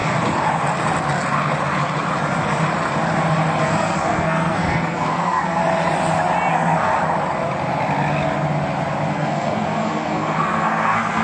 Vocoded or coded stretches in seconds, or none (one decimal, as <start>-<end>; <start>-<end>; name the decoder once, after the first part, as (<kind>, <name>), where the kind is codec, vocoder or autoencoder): 3.6-5.6 (codec, SNAC); 6.5-6.9; 9.1-11.2